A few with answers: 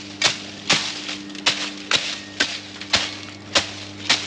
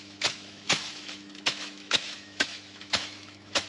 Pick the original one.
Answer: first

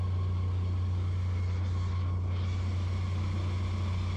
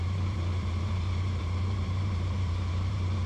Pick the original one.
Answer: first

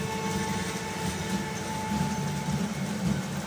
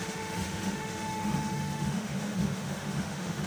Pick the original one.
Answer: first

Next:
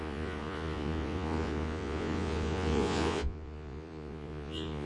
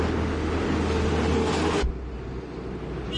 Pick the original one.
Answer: second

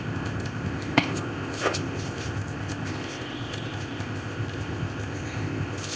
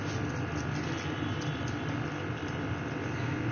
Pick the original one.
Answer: second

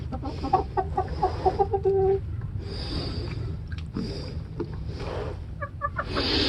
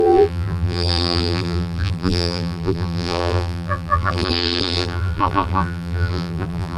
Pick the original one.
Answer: first